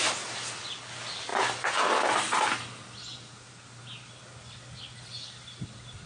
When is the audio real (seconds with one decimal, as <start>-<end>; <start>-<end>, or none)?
0.0-6.1